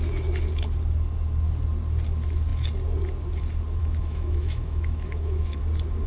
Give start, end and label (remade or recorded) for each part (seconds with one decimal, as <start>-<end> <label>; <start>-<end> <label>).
0.0-3.8 recorded; 3.8-5.6 remade; 5.6-6.1 recorded